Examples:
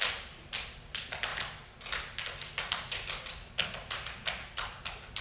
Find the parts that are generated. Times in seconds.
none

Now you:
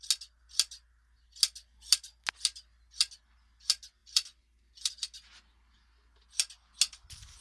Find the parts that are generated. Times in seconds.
4.0-4.9 (vocoder, BigVGAN v2)

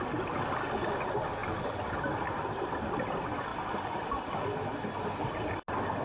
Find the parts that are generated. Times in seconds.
none

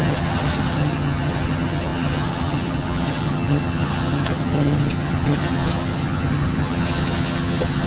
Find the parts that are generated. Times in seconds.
0.0-7.9 (vocoder, HiFi-GAN)

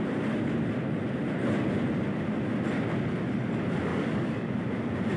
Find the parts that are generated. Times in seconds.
3.9-4.5 (codec, DAC)